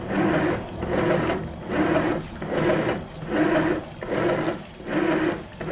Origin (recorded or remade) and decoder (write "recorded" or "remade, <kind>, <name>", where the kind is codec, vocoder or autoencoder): recorded